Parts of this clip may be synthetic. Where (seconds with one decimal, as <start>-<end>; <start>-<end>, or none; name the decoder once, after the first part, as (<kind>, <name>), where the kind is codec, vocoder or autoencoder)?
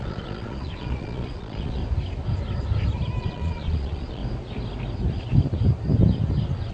0.0-1.8 (vocoder, Vocos); 3.2-4.2